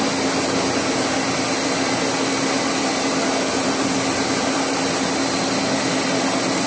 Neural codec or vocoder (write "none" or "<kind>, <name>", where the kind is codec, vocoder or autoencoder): none